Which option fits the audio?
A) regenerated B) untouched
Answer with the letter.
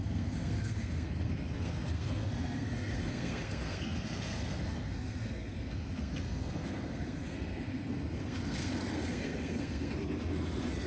A